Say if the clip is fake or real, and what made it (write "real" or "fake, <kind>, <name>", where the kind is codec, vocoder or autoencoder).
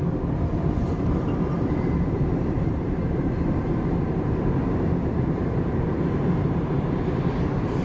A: fake, vocoder, BigVGAN v2